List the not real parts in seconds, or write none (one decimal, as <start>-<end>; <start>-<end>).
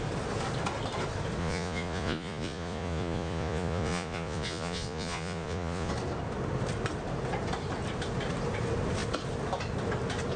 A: 1.4-5.9